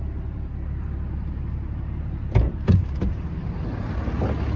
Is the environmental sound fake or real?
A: real